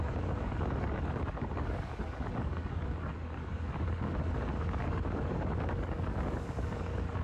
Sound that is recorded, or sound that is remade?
remade